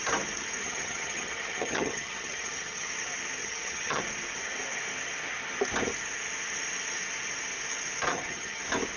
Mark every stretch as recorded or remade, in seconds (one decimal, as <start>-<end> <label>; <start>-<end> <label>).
0.0-0.6 recorded; 0.6-2.9 remade; 2.9-3.4 recorded; 3.4-4.0 remade; 4.0-8.1 recorded; 8.1-8.6 remade; 8.6-9.0 recorded

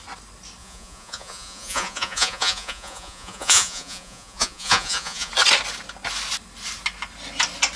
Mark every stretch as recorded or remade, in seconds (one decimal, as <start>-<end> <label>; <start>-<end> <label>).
0.0-0.6 recorded; 0.6-5.3 remade; 5.3-7.8 recorded

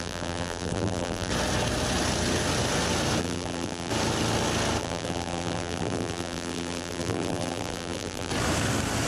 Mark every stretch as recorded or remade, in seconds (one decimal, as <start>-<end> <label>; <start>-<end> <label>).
0.0-1.3 remade; 1.3-3.2 recorded; 3.2-3.9 remade; 3.9-4.8 recorded; 4.8-8.3 remade; 8.3-9.1 recorded

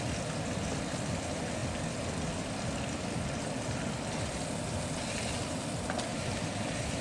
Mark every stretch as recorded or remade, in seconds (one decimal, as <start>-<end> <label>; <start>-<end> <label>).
0.0-7.0 recorded

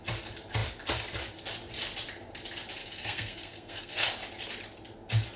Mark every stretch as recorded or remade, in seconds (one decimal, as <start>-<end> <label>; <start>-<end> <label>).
0.0-2.8 recorded; 2.8-4.1 remade; 4.1-5.4 recorded

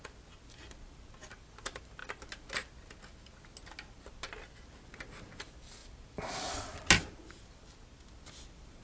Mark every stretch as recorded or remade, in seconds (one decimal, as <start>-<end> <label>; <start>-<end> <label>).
0.0-8.8 recorded